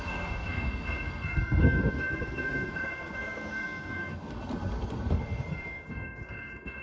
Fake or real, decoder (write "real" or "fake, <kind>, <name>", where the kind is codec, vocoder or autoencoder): fake, codec, SNAC